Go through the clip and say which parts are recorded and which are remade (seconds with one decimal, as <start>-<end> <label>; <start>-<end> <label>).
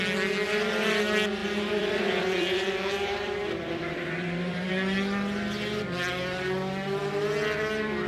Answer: 0.0-1.4 recorded; 1.4-4.7 remade; 4.7-8.1 recorded